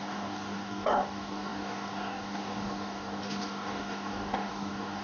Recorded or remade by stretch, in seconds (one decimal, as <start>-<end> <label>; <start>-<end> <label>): 0.0-5.0 remade